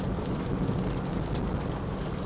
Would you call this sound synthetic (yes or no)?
no